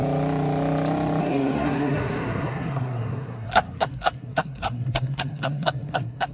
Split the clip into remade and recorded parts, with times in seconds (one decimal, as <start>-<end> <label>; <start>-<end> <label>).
0.0-1.2 recorded; 1.2-6.3 remade